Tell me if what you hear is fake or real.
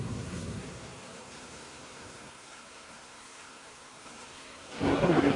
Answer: fake